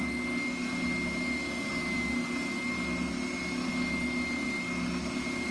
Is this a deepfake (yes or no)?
no